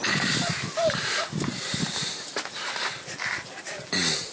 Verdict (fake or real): real